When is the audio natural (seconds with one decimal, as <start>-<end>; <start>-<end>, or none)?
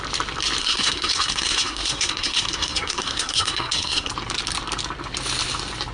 0.0-0.6; 4.1-5.9